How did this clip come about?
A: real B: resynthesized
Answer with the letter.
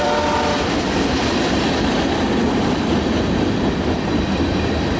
B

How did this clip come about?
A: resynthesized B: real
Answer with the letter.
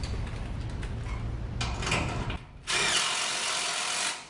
B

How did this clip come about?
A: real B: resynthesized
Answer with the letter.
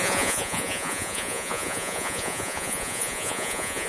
B